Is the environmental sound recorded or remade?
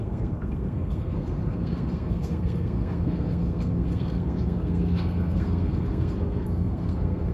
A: remade